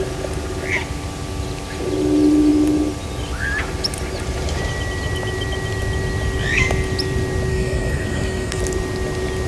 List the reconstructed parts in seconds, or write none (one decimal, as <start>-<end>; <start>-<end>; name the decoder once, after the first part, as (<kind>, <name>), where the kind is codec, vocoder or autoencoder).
7.5-8.6 (codec, SNAC)